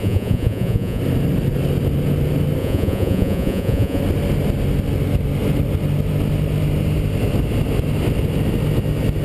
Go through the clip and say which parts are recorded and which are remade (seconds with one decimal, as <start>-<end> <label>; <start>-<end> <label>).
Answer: 0.0-1.0 remade; 1.0-2.6 recorded; 2.6-4.0 remade; 4.0-9.2 recorded